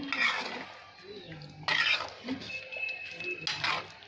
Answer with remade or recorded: recorded